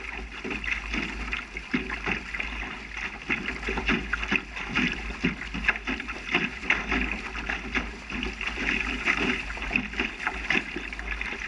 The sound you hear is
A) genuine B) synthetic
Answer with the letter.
A